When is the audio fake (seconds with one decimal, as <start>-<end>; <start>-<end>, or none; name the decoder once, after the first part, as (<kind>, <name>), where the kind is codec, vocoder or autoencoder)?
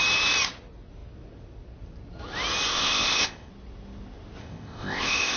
2.7-3.5 (codec, ZipCodec); 4.4-5.4